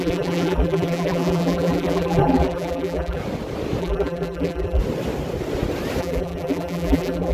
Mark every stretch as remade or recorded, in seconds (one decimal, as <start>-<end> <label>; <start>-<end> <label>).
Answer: 0.0-3.2 remade; 3.2-3.8 recorded; 3.8-4.8 remade; 4.8-6.0 recorded; 6.0-7.3 remade